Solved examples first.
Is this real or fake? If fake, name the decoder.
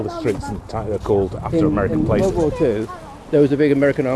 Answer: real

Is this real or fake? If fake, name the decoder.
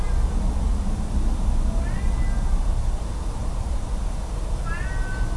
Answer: real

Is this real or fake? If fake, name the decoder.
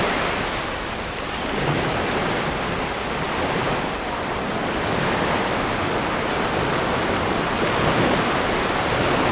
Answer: real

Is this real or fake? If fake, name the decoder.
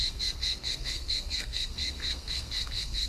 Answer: fake, codec, SNAC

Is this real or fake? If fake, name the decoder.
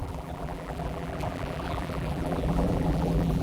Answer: fake, vocoder, BigVGAN v2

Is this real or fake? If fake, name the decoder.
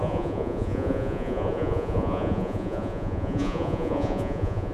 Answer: fake, vocoder, Vocos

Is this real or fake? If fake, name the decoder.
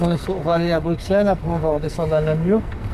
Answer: fake, codec, SNAC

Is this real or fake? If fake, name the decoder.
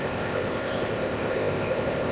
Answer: fake, codec, ZipCodec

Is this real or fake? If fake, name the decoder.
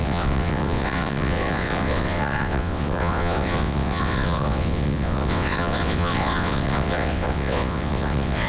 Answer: fake, vocoder, WaveNeXt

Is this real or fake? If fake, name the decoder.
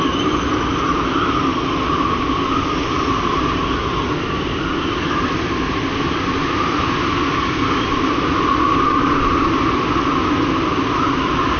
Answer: real